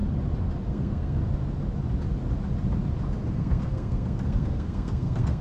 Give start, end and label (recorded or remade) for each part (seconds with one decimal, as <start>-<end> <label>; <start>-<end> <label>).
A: 0.0-0.7 recorded; 0.7-1.2 remade; 1.2-3.3 recorded; 3.3-5.4 remade